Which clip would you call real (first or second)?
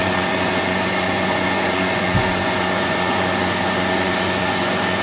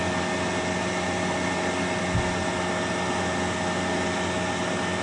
second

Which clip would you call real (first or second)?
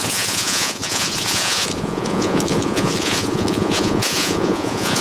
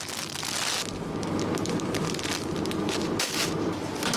second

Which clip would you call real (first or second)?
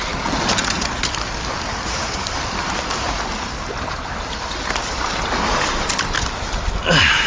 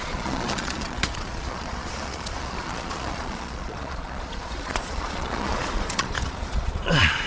first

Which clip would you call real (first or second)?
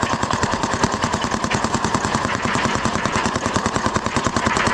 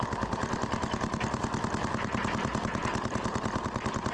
second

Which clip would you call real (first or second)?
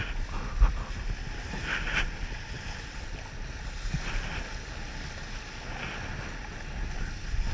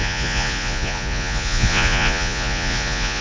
first